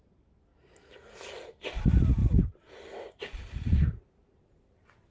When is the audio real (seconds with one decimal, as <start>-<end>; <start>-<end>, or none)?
0.0-5.1